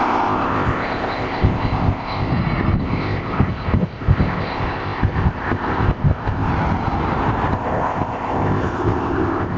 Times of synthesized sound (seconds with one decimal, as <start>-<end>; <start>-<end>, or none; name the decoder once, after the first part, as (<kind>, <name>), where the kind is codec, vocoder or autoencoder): 0.0-2.3 (codec, ZipCodec); 2.8-6.5; 7.5-9.6

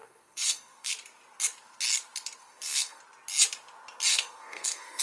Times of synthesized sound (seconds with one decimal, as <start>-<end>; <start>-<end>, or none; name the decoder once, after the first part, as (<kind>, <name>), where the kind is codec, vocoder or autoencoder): 0.0-0.9 (codec, SNAC); 2.4-3.0; 4.1-5.0